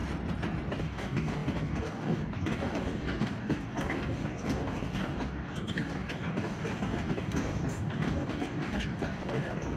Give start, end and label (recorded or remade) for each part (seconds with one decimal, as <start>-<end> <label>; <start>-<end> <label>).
0.0-0.8 recorded; 0.8-9.8 remade